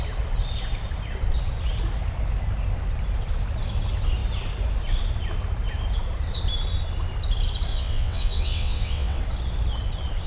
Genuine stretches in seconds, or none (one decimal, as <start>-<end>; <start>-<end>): 0.0-7.7; 9.2-10.3